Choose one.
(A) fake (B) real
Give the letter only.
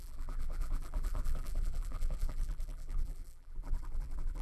A